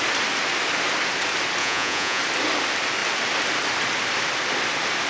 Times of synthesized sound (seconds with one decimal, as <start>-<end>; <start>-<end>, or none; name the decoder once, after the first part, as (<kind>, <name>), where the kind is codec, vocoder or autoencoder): 1.6-2.2 (vocoder, Vocos)